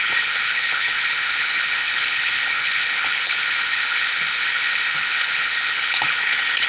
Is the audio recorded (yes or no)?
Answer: no